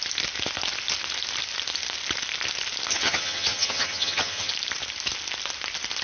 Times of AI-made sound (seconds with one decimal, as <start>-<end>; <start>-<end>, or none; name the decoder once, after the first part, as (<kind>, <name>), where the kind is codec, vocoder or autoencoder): 2.9-4.5 (vocoder, HiFi-GAN)